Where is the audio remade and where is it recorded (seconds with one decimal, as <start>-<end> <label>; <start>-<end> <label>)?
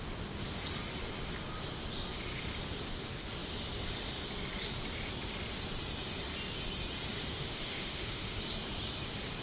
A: 0.0-7.4 recorded; 7.4-8.4 remade; 8.4-9.4 recorded